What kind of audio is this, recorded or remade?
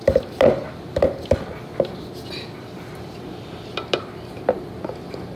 remade